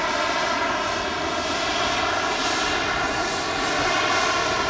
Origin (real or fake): real